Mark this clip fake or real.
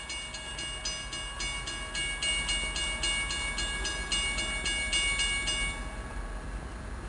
real